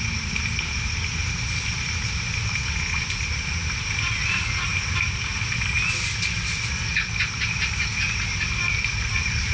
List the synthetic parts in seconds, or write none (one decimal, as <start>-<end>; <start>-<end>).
none